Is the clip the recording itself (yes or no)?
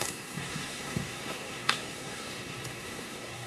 no